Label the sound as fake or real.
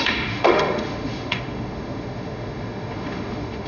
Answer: fake